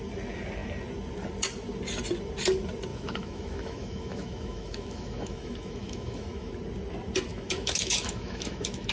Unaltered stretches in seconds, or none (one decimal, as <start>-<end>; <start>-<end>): 0.0-2.9; 6.5-7.3